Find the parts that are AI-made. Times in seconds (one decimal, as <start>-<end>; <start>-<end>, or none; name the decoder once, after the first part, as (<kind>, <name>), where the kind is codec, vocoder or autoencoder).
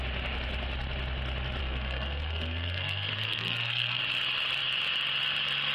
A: 1.6-4.0 (codec, SNAC)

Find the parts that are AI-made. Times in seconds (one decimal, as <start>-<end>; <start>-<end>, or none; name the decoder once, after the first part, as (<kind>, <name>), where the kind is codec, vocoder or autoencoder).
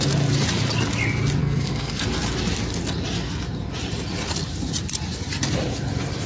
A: 1.4-2.0 (codec, SNAC)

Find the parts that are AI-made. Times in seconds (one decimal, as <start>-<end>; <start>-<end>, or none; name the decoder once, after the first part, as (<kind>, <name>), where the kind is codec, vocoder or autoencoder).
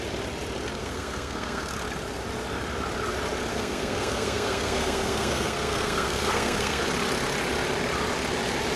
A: 0.8-1.7 (codec, SNAC); 3.5-6.8